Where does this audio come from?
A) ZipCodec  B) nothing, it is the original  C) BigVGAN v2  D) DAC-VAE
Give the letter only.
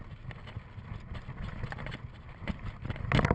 B